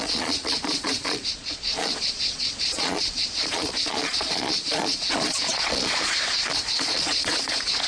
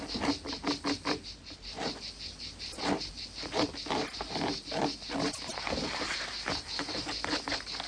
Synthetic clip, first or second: first